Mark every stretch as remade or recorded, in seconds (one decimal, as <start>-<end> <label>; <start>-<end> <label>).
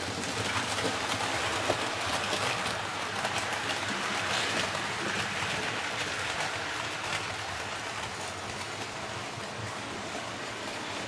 0.0-9.6 recorded; 9.6-10.2 remade; 10.2-11.1 recorded